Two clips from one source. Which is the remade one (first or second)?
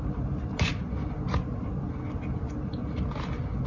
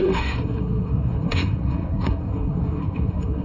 second